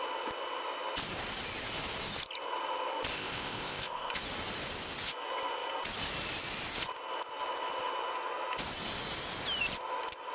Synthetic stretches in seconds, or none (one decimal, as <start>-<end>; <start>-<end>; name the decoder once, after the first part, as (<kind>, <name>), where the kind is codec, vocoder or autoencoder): 3.1-4.1 (codec, ZipCodec)